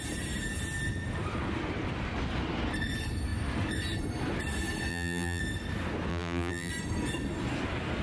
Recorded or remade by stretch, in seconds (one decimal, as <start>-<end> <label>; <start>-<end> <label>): 0.0-4.9 recorded; 4.9-5.4 remade; 5.4-6.1 recorded; 6.1-6.7 remade; 6.7-8.0 recorded